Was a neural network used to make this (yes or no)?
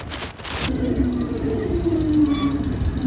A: no